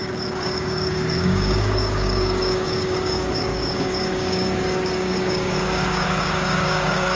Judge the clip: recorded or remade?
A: remade